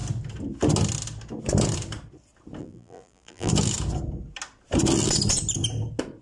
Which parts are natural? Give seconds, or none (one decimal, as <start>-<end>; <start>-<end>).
0.0-2.6; 3.5-6.2